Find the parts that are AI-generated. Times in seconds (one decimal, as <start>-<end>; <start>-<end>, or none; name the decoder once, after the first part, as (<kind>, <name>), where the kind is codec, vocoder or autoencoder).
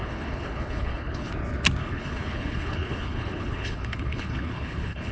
0.0-1.3 (codec, HILCodec); 1.8-5.1